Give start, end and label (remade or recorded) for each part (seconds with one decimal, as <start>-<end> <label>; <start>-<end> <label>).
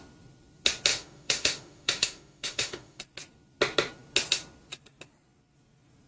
0.0-0.9 recorded; 0.9-3.0 remade; 3.0-6.1 recorded